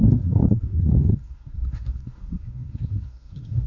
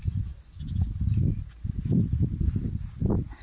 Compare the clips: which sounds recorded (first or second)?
second